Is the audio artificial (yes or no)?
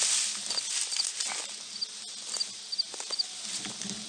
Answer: no